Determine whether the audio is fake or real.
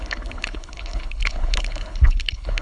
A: fake